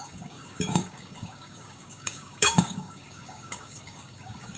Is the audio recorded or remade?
remade